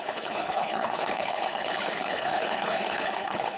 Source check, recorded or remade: remade